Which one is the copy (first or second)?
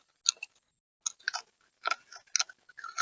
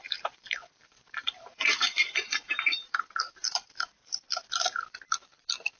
second